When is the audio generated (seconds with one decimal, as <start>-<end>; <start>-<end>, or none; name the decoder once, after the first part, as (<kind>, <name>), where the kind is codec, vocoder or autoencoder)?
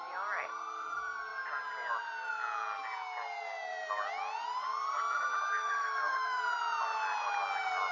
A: 5.6-6.4 (autoencoder, DAC-VAE)